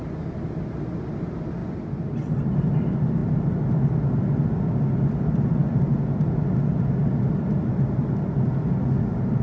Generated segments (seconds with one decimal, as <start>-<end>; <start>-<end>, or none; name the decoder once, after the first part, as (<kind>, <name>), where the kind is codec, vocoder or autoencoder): none